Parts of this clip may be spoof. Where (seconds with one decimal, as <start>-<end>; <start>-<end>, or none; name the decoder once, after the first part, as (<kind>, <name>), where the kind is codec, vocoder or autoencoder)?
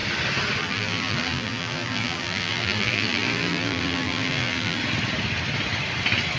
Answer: 0.6-4.8 (vocoder, BigVGAN v2)